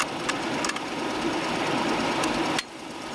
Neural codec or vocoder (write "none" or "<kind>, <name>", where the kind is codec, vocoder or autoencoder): none